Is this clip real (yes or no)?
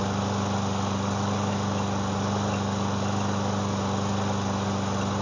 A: yes